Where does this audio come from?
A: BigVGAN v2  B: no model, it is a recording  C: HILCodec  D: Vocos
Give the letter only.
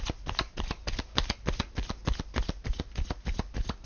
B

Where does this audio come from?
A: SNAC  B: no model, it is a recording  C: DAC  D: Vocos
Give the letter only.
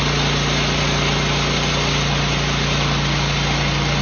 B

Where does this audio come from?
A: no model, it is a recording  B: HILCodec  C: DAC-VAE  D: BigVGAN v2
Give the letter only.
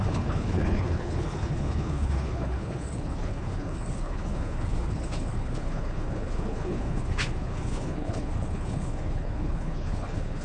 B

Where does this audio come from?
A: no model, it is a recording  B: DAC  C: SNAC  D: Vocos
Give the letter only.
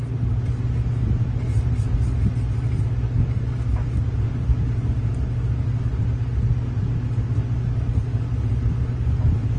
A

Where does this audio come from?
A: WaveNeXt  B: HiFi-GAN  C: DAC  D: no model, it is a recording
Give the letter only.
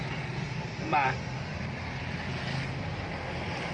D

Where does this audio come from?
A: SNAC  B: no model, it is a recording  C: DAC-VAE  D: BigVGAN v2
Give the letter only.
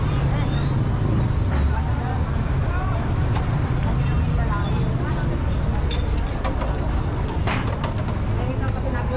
B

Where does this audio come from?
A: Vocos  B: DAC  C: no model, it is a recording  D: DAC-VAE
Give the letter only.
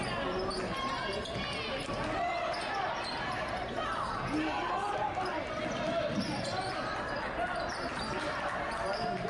C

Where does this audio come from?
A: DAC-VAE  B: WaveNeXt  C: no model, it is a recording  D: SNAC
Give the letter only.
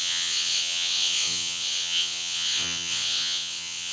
B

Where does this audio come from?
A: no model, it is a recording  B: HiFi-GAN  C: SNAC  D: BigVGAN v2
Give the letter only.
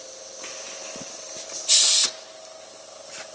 A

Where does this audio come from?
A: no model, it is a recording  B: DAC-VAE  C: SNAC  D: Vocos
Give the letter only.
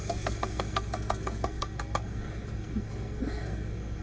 C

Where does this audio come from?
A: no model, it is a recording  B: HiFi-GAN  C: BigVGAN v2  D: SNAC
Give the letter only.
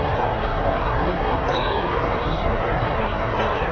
D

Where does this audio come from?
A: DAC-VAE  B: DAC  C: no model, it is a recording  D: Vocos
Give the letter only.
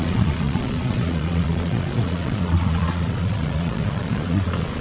D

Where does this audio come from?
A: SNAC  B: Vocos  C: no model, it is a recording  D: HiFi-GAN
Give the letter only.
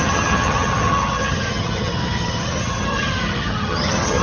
D